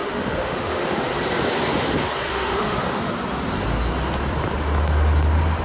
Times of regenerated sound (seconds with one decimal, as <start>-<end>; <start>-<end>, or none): 0.0-1.0; 2.3-3.1